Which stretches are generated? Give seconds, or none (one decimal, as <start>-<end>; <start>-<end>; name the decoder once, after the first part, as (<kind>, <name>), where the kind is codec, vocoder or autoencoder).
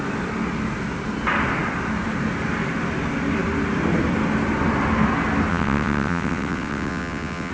5.5-7.5 (vocoder, WaveNeXt)